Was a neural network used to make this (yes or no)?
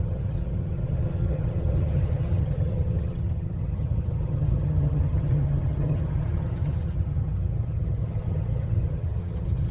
yes